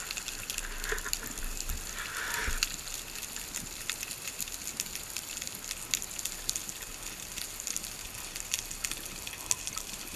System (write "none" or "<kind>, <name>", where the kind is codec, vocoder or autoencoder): none